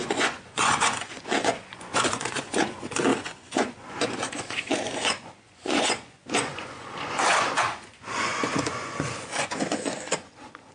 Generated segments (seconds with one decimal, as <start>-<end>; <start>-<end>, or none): 0.0-10.7